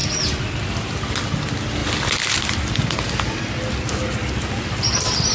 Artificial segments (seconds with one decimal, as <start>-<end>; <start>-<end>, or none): none